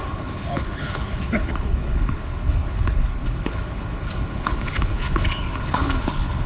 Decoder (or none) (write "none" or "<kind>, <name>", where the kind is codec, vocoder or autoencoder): codec, HILCodec